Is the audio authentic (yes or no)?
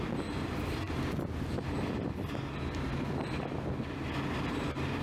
yes